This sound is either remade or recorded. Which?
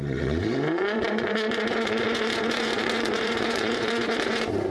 remade